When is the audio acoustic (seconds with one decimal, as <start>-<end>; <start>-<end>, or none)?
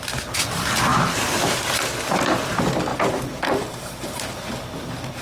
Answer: 0.0-0.9; 2.2-2.9; 4.3-5.2